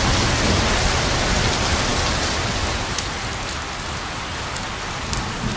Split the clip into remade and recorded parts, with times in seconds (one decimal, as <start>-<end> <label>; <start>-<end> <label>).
0.0-5.6 recorded